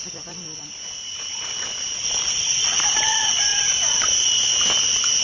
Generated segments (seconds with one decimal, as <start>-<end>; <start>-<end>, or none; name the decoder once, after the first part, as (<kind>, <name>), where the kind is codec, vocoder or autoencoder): none